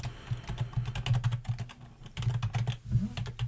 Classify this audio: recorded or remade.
recorded